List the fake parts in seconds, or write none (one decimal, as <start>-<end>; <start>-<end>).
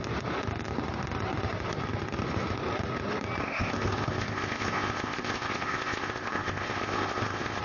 3.4-7.6